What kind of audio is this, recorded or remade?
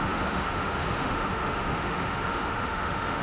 remade